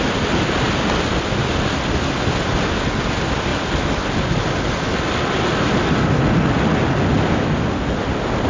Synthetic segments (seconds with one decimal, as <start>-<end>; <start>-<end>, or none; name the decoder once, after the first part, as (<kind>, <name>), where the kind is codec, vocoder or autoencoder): none